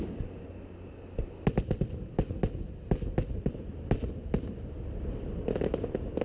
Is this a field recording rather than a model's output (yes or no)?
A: yes